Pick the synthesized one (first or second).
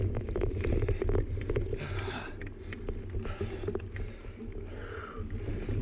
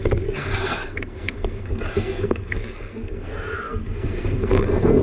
second